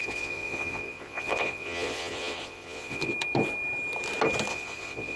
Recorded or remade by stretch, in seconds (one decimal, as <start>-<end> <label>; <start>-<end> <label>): 0.0-3.1 remade; 3.1-4.5 recorded; 4.5-5.2 remade